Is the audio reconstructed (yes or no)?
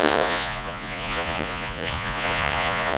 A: yes